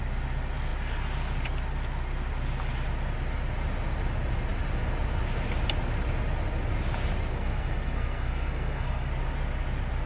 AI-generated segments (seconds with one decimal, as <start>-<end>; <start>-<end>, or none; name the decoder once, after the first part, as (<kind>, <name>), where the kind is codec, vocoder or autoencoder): 7.3-9.1 (codec, SNAC)